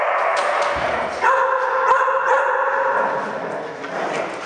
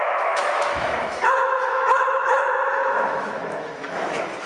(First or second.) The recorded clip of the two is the first